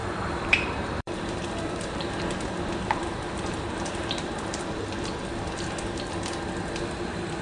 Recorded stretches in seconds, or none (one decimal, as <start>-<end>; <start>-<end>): 4.3-7.4